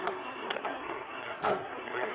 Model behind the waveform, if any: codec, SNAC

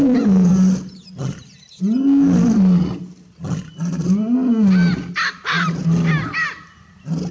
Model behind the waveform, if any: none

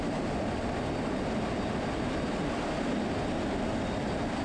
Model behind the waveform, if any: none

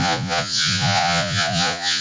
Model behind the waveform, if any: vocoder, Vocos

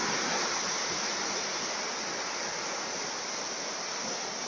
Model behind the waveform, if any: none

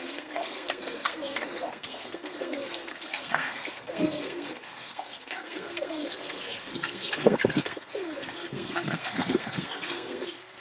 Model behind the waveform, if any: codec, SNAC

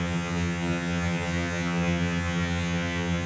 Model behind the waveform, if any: vocoder, HiFi-GAN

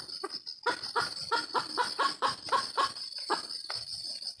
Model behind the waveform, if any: none